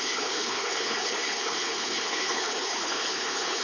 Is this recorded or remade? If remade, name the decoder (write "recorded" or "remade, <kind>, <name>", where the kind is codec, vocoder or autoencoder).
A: remade, codec, HILCodec